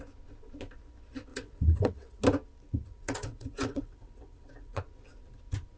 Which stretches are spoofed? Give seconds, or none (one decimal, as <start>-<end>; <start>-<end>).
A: 1.3-2.2; 2.8-4.8